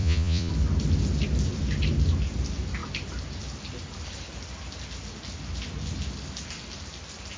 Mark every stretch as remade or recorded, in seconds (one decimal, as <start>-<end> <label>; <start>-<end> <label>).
0.0-0.5 remade; 0.5-7.4 recorded